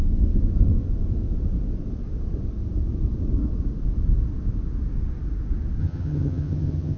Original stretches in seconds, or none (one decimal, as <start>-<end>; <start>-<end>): 0.0-5.8